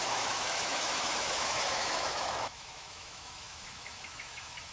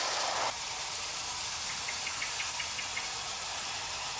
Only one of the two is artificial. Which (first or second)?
first